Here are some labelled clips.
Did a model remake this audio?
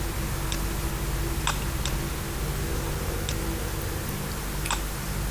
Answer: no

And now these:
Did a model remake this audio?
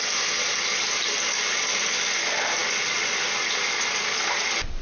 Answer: no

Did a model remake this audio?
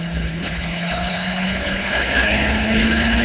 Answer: yes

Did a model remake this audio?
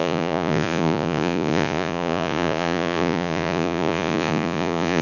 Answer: yes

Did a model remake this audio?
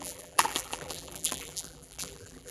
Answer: yes